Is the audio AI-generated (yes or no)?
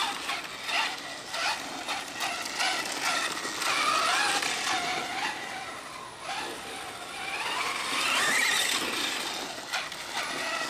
no